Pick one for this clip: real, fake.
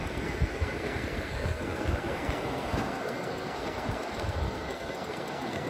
fake